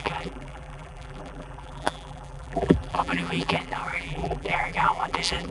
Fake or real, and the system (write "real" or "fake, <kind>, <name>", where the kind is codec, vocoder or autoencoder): fake, vocoder, BigVGAN v2